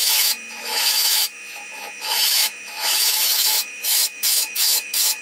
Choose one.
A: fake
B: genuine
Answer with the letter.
A